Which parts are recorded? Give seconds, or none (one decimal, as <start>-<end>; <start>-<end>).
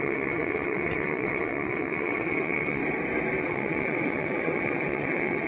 2.8-3.4